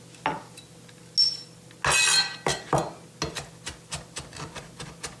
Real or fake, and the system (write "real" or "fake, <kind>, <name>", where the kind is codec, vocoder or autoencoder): real